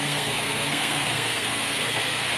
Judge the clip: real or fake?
fake